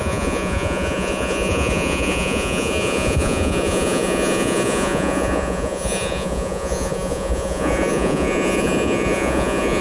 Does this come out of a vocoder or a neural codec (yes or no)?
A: yes